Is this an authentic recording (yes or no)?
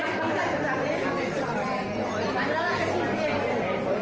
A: yes